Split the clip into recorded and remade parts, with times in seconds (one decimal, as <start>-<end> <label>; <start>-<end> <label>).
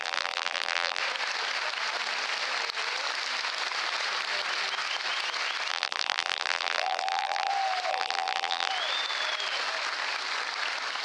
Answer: 0.0-1.0 remade; 1.0-5.7 recorded; 5.7-7.5 remade; 7.5-7.9 recorded; 7.9-8.7 remade; 8.7-11.0 recorded